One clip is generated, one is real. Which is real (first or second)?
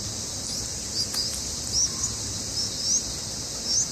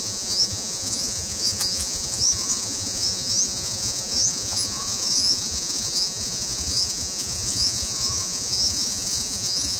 first